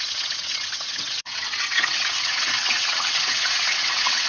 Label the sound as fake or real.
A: fake